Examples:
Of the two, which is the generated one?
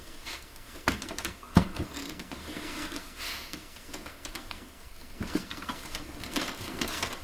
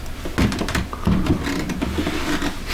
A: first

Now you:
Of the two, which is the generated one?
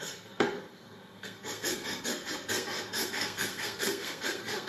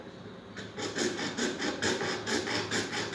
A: first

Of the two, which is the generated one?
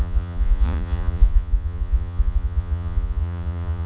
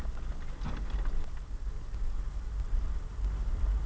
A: first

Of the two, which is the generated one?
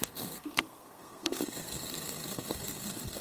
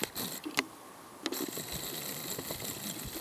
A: first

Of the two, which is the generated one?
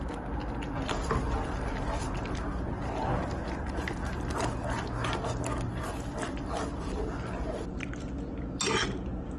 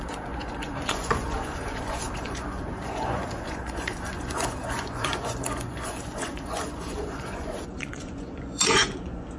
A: second